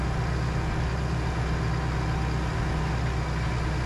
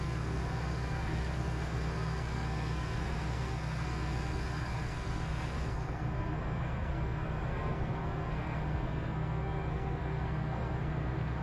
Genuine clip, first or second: first